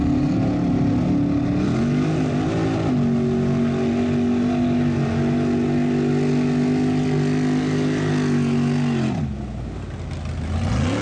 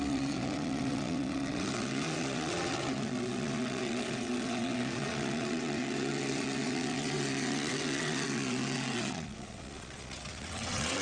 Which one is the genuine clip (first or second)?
first